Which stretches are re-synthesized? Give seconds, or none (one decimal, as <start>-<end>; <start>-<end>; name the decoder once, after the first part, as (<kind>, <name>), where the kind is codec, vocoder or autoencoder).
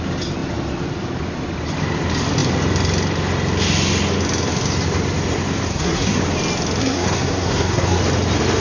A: 5.7-6.2 (codec, SNAC); 6.8-8.0